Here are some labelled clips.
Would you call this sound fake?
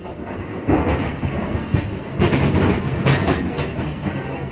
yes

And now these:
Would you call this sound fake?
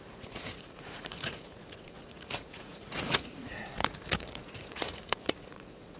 yes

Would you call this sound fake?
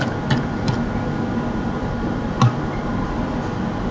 no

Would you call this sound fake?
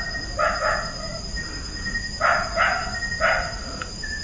no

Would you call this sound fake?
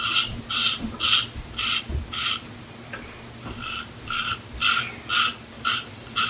no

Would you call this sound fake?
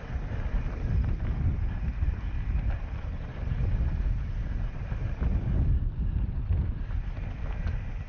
no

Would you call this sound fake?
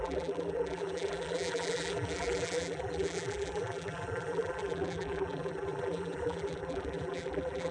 yes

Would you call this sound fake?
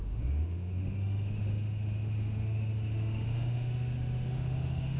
yes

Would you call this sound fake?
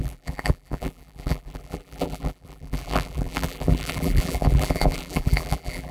yes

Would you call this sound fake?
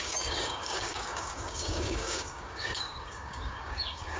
yes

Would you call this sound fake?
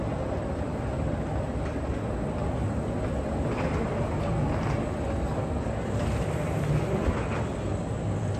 no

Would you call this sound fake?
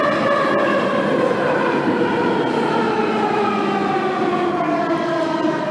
no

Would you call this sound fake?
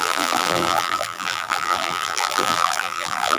yes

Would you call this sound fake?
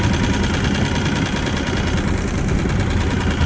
no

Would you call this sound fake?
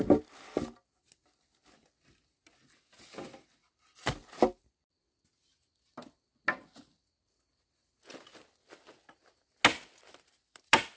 no